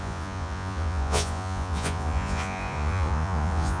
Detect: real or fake fake